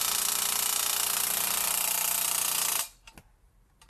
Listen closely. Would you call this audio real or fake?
fake